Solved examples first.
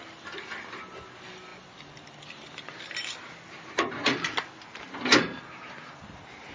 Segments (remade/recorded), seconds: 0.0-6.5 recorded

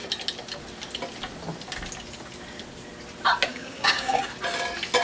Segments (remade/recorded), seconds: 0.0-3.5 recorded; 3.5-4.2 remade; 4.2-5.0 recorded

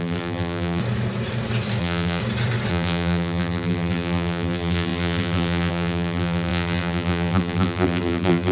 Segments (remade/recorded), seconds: 0.0-0.8 remade; 0.8-1.8 recorded; 1.8-2.2 remade; 2.2-2.7 recorded; 2.7-8.5 remade